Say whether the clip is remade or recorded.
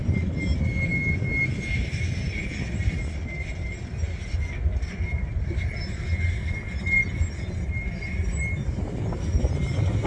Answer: recorded